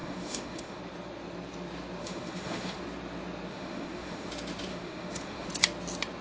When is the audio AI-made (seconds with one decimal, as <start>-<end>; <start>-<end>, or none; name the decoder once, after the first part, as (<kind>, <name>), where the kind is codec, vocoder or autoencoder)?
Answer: 0.0-0.8 (autoencoder, DAC-VAE); 2.0-2.8; 3.5-4.3; 4.7-5.5